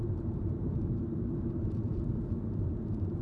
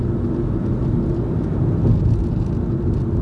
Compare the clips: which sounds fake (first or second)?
first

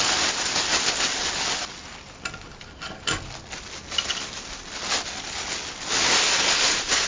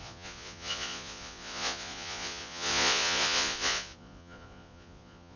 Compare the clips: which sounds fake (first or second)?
second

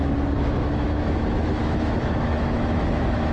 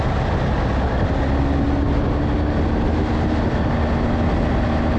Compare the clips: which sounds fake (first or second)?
first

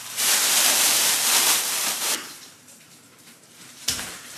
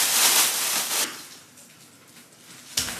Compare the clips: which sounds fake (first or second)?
first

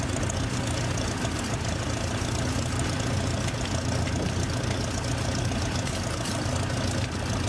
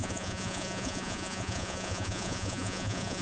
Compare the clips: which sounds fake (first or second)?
second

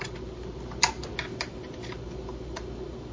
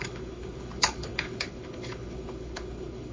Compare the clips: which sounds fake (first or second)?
second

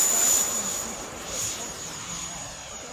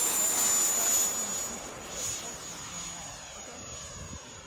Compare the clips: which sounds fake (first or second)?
first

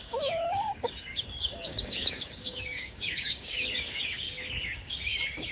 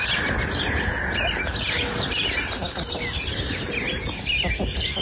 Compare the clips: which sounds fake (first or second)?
first